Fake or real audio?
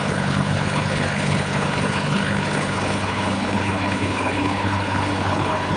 fake